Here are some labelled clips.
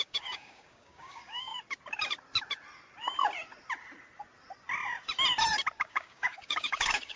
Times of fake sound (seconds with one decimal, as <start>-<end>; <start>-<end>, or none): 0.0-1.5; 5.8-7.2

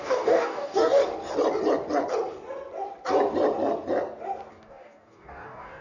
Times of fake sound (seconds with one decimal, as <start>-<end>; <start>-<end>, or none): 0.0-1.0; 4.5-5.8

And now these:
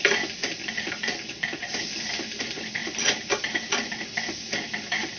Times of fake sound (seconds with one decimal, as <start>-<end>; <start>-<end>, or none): none

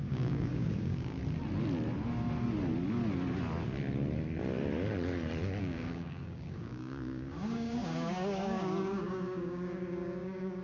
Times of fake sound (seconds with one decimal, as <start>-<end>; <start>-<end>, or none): 0.0-1.2; 5.6-10.6

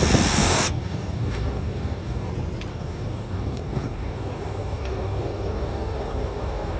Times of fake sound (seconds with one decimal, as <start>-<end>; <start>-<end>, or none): 0.4-2.3; 2.7-6.8